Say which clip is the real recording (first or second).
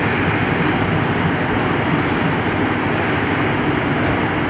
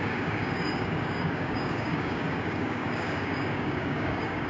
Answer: first